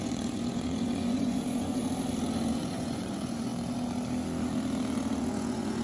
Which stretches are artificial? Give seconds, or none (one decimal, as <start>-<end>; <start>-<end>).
0.0-1.8; 2.5-3.5; 5.2-5.8